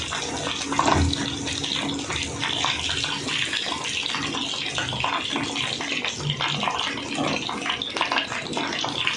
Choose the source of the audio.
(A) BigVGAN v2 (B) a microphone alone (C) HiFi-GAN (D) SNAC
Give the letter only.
B